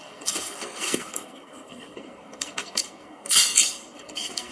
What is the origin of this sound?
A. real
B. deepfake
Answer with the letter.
B